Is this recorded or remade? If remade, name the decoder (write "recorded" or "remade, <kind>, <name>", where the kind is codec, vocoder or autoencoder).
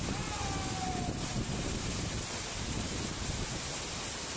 recorded